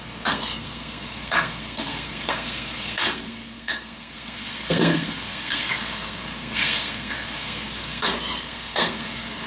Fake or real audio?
fake